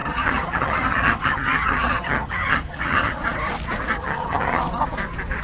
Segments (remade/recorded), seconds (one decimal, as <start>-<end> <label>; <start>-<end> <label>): 0.0-3.2 remade; 3.2-4.0 recorded; 4.0-4.6 remade; 4.6-5.4 recorded